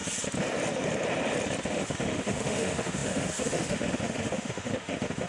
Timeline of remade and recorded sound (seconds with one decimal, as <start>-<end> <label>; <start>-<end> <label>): 0.0-1.7 recorded; 1.7-5.3 remade